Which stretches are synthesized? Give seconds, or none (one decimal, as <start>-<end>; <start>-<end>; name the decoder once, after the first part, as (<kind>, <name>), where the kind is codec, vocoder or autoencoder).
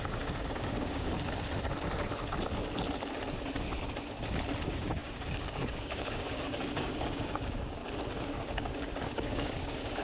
0.0-1.1 (codec, DAC); 4.6-7.8; 8.5-10.0